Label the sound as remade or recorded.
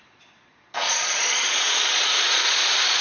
remade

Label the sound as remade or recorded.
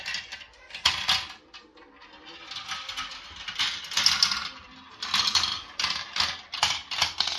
recorded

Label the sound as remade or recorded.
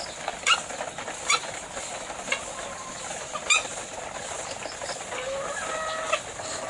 recorded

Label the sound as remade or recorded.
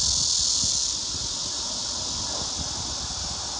recorded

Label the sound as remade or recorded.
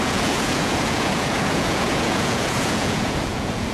remade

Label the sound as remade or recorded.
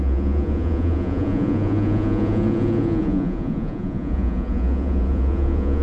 remade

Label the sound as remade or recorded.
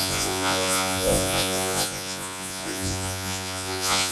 remade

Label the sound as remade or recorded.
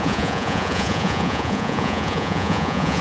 remade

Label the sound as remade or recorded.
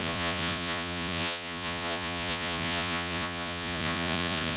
remade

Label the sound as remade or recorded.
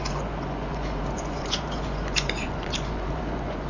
remade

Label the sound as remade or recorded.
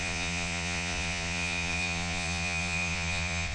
remade